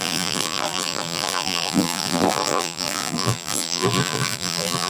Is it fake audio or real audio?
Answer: fake